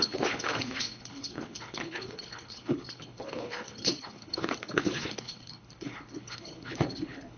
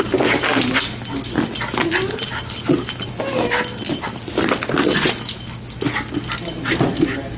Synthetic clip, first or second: first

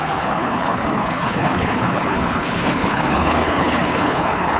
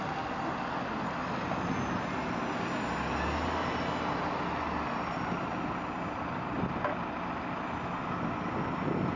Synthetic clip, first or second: first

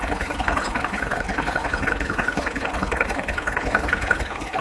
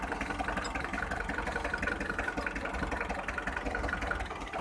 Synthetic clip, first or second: first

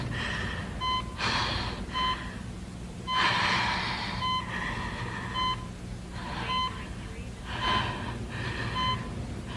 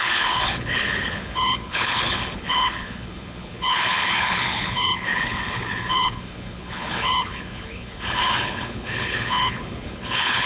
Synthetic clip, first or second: second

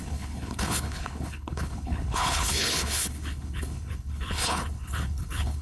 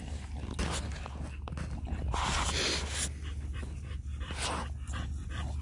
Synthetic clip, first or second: first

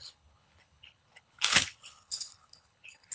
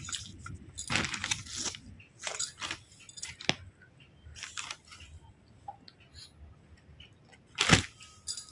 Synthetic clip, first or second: first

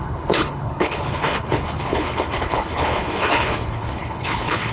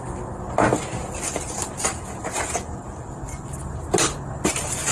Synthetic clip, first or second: first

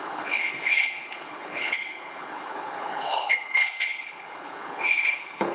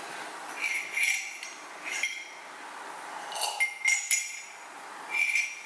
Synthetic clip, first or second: first